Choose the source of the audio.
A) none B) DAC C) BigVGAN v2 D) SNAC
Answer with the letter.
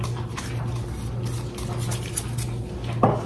A